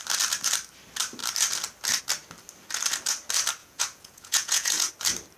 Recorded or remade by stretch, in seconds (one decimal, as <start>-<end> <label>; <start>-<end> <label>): 0.0-3.6 recorded; 3.6-4.9 remade; 4.9-5.4 recorded